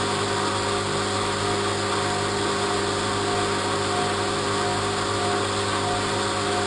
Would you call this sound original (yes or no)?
yes